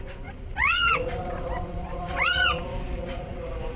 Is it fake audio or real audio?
fake